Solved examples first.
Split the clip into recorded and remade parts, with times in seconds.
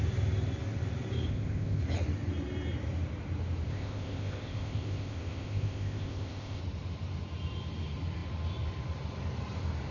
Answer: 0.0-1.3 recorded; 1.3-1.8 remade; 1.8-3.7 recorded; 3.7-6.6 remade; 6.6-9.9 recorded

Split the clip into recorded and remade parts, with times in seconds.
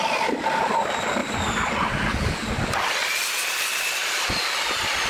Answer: 0.0-5.1 recorded